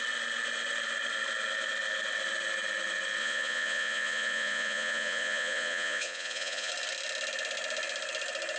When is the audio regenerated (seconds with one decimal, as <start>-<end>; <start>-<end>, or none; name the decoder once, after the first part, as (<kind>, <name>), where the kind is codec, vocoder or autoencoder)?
3.2-6.7 (vocoder, Vocos)